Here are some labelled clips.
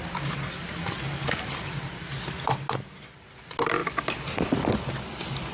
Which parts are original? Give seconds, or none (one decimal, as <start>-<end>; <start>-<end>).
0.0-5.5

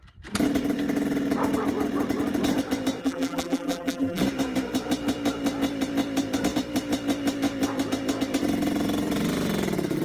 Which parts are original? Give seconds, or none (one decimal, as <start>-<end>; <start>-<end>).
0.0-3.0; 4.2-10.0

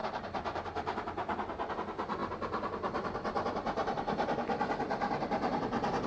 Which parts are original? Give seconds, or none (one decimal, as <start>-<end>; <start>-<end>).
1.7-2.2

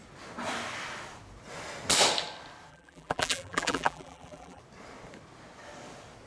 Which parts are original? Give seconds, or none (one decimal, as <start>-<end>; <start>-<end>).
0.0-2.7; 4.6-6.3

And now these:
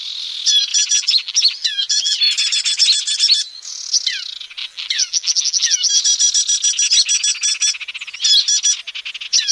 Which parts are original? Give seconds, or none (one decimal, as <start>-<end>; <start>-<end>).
0.0-0.7; 2.2-4.6; 5.9-9.5

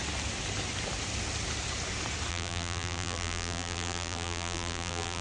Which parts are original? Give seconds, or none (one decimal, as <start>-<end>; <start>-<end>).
0.0-2.3